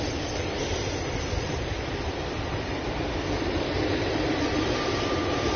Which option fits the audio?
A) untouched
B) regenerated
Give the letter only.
A